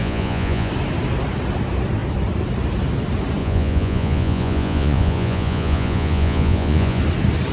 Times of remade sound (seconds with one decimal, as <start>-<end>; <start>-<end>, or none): 0.0-0.7; 3.4-7.0